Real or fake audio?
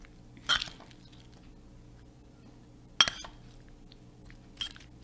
real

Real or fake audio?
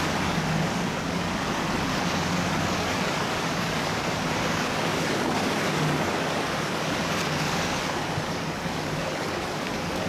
fake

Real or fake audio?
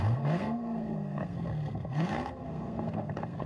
fake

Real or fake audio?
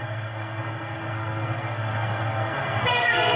fake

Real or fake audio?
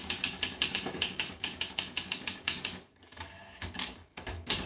fake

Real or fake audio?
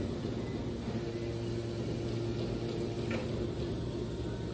real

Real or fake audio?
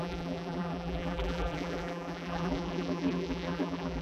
fake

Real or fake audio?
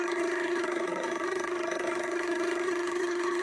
fake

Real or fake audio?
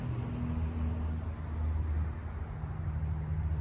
real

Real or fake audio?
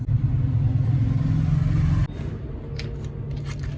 real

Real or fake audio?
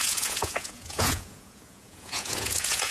fake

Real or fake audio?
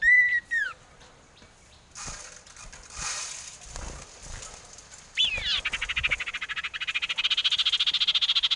real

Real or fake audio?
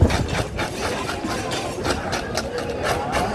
real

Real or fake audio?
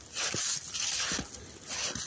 real